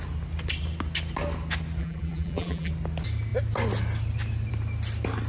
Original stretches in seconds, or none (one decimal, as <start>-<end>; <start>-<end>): 0.0-1.8; 2.7-5.3

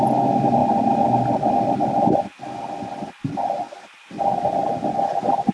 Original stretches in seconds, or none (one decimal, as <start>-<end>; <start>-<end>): 0.0-5.5

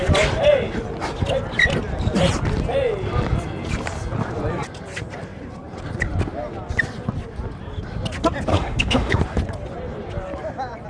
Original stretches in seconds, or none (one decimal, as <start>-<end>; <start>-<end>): 0.0-8.5; 9.2-10.9

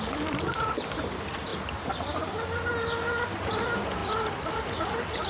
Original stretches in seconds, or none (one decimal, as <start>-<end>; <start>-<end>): 0.0-5.3

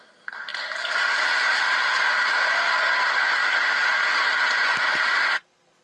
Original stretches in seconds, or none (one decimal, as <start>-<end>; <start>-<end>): 0.0-5.8

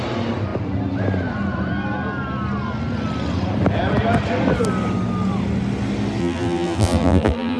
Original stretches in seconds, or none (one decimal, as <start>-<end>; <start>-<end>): 0.0-6.2

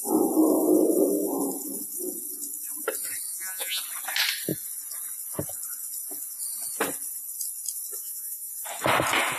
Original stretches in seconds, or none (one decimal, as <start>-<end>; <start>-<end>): 0.0-3.3; 3.8-8.0; 8.5-9.4

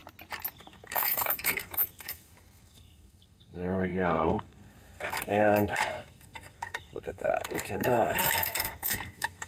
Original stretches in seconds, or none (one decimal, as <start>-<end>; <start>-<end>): 0.0-0.5